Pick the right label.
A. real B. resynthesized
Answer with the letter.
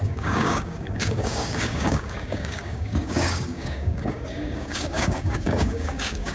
B